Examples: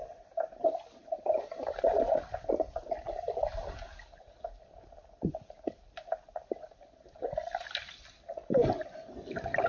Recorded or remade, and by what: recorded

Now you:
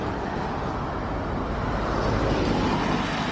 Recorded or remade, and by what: recorded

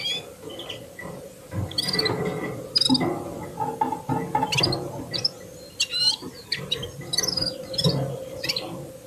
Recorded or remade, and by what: recorded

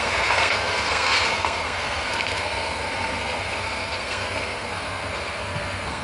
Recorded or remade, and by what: remade, codec, SNAC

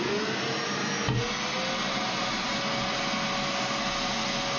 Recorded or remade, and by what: recorded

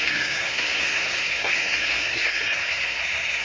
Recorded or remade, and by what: remade, codec, SNAC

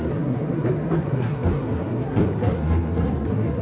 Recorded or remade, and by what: remade, codec, SNAC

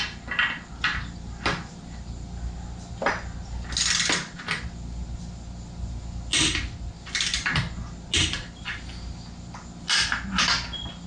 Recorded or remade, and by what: recorded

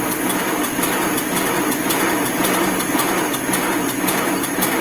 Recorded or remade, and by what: recorded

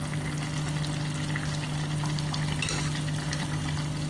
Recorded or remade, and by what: recorded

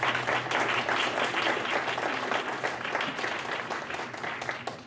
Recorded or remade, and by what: recorded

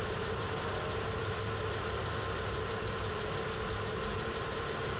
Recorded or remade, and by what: remade, vocoder, BigVGAN v2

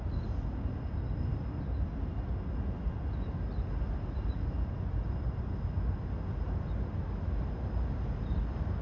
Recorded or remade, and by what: recorded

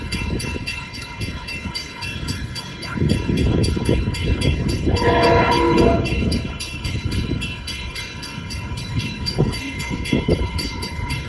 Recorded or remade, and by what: remade, codec, HILCodec